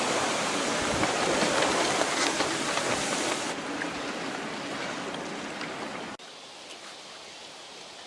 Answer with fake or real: real